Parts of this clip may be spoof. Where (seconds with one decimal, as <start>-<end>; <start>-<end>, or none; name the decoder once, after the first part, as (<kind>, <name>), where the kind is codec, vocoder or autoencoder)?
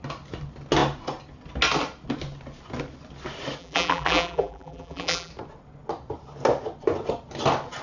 3.6-5.3 (vocoder, BigVGAN v2)